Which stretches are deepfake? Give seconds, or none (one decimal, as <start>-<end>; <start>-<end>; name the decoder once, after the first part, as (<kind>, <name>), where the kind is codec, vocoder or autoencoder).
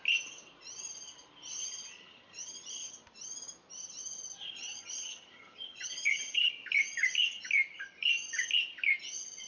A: 1.6-2.9 (vocoder, HiFi-GAN); 4.4-6.5